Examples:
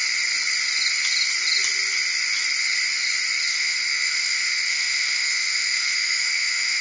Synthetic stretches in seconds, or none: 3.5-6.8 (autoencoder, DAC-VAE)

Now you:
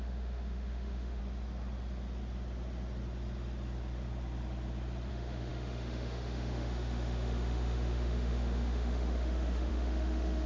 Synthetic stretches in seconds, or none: 0.0-1.2 (autoencoder, DAC-VAE); 5.1-10.5

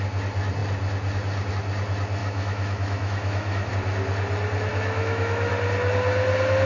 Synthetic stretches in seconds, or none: 2.2-3.7 (autoencoder, DAC-VAE); 4.7-5.5

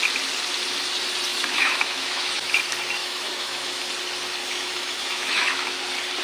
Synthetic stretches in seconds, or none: 1.3-2.6 (autoencoder, DAC-VAE); 3.0-3.8; 4.4-5.8

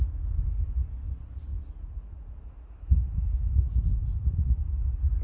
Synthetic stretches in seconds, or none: 1.5-3.6 (autoencoder, DAC-VAE)